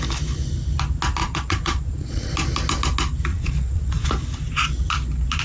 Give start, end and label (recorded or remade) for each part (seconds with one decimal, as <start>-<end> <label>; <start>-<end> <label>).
0.0-1.2 recorded; 1.2-2.3 remade; 2.3-3.3 recorded; 3.3-4.1 remade; 4.1-5.4 recorded